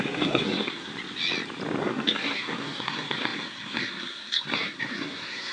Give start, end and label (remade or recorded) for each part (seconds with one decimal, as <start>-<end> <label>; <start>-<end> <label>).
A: 0.0-0.9 remade; 0.9-1.8 recorded; 1.8-5.5 remade